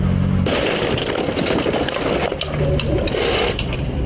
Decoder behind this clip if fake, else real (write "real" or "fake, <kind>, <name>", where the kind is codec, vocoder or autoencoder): real